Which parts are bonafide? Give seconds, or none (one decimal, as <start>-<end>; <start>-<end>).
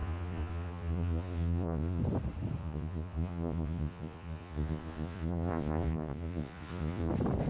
2.0-2.6; 7.1-7.5